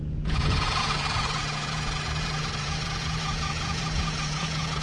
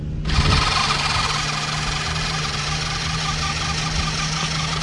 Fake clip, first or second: first